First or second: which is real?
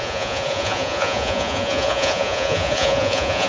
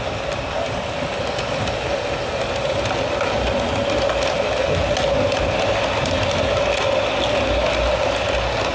second